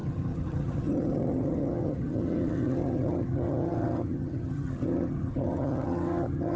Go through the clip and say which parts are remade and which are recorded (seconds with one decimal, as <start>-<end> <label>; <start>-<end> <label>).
0.0-6.6 remade